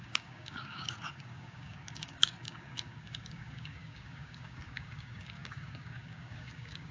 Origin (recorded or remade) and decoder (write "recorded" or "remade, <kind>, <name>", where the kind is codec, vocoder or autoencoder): remade, codec, DAC